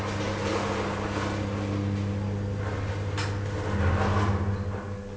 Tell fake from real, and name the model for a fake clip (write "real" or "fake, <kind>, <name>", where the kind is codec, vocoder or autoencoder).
real